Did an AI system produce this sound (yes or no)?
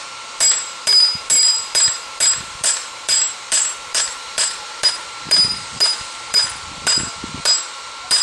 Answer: yes